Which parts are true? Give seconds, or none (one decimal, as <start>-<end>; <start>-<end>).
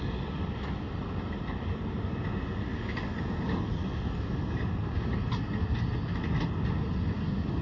0.0-7.6